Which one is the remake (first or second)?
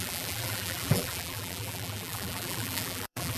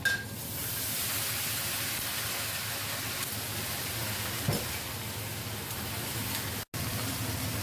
first